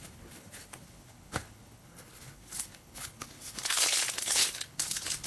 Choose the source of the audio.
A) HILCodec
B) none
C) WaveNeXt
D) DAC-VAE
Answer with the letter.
A